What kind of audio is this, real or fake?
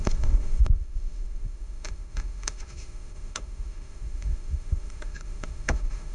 fake